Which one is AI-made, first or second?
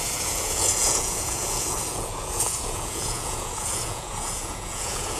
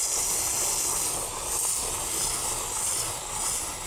first